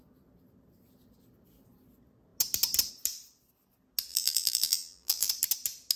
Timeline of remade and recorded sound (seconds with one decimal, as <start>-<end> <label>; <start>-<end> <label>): 0.0-4.1 recorded; 4.1-5.3 remade; 5.3-6.0 recorded